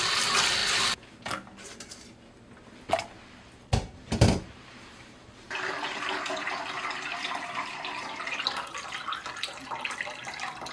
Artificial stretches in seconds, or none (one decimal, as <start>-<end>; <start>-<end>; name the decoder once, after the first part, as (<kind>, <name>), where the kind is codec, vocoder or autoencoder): none